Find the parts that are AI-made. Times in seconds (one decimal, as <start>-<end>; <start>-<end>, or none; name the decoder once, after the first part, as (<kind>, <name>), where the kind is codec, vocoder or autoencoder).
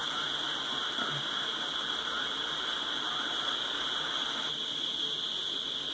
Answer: none